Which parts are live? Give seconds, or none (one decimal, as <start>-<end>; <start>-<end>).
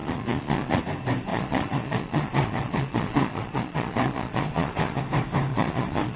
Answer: 0.8-1.3; 5.0-5.5